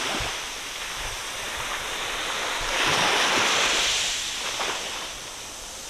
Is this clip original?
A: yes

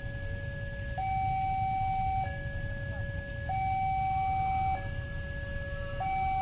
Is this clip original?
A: yes